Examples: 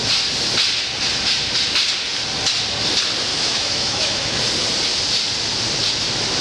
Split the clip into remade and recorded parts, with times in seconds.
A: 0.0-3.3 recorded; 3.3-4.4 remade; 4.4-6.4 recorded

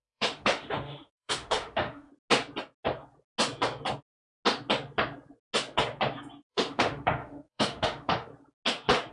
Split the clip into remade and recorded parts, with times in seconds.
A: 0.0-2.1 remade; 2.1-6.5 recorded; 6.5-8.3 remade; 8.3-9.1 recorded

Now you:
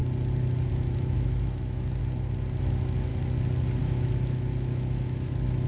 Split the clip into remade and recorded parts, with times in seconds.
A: 0.0-0.7 recorded; 0.7-2.0 remade; 2.0-2.6 recorded; 2.6-3.1 remade; 3.1-3.8 recorded; 3.8-5.7 remade